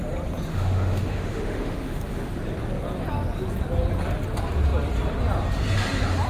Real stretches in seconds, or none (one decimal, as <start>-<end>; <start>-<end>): 0.0-0.5; 2.3-6.3